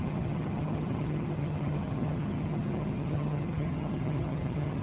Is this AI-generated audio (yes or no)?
yes